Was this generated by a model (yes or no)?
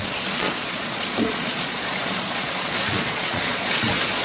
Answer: yes